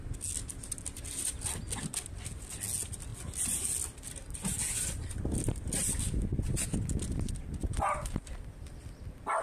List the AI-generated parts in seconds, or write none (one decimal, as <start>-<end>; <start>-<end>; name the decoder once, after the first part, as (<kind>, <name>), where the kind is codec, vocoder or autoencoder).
none